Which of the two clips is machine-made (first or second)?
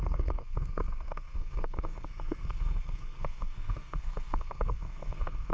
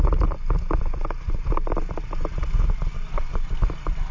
first